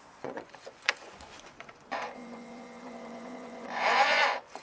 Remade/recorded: remade